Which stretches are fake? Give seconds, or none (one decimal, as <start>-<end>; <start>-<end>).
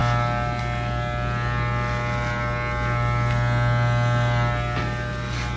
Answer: none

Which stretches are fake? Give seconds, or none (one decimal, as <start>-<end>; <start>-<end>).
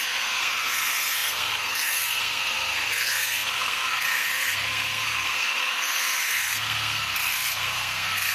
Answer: 0.0-8.3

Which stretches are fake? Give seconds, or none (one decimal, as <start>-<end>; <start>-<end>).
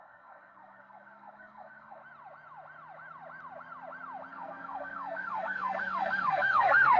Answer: 0.0-2.0; 4.3-7.0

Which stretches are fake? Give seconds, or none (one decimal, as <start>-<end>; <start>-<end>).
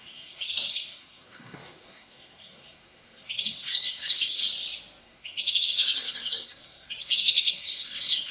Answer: 0.0-4.4; 5.0-8.3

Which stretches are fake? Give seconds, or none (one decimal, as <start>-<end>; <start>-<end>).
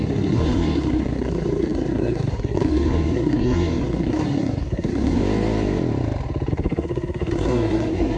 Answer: 0.0-5.2; 6.5-8.2